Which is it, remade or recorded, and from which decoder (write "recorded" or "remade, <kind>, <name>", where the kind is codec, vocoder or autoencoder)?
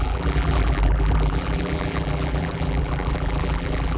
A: remade, vocoder, BigVGAN v2